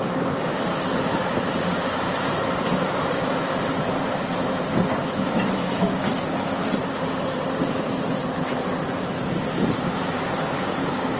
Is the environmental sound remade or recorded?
remade